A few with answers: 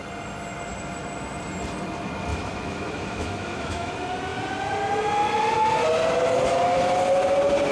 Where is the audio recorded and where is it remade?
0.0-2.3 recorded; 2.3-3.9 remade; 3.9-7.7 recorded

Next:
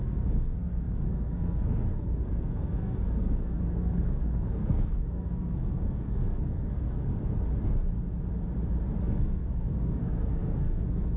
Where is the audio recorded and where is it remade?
0.0-7.1 remade; 7.1-9.0 recorded; 9.0-11.2 remade

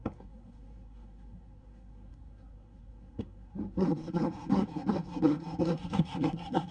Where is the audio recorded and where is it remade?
0.0-6.7 remade

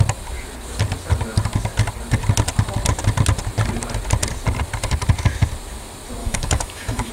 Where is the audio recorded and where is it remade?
0.0-6.2 recorded; 6.2-7.1 remade

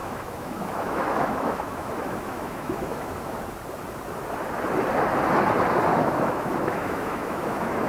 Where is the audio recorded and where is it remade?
0.0-3.4 remade; 3.4-5.9 recorded; 5.9-7.9 remade

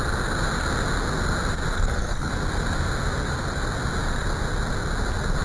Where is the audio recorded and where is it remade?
0.0-1.7 recorded; 1.7-2.3 remade; 2.3-5.4 recorded

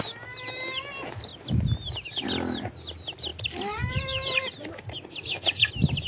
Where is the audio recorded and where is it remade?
0.0-6.1 recorded

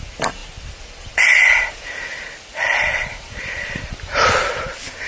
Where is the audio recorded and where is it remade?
0.0-5.1 remade